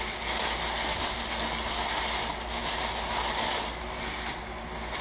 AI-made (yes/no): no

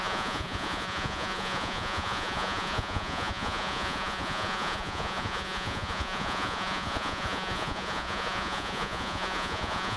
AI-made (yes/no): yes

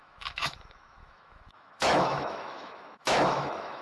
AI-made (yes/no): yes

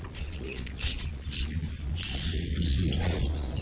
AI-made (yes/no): yes